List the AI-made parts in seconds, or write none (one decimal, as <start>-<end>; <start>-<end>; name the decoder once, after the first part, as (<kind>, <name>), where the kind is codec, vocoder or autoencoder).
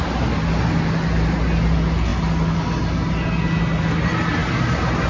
none